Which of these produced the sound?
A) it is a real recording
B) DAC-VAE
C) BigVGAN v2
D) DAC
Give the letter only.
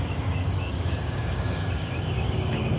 D